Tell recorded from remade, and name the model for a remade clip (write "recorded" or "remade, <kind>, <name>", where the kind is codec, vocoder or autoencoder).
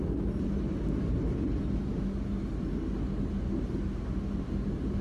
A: recorded